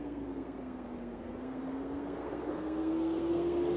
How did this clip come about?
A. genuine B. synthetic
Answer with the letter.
B